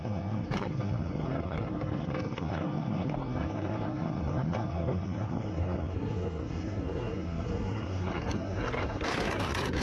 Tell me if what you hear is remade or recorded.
remade